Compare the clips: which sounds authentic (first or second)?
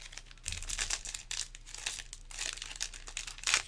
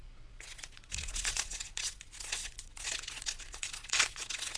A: first